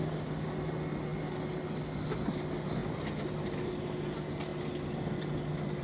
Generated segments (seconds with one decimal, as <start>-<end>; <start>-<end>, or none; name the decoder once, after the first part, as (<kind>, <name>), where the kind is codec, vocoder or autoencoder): none